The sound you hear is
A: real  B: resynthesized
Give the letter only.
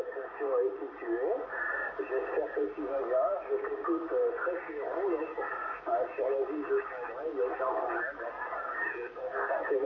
A